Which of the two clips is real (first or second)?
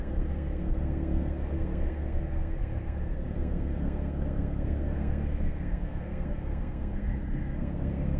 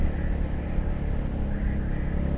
second